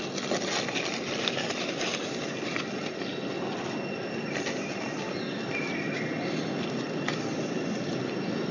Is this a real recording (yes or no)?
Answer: yes